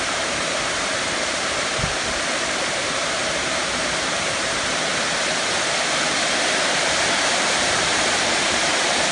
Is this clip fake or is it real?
fake